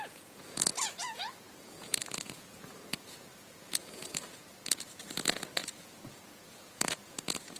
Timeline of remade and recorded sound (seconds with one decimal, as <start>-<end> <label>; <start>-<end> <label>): 0.0-7.6 remade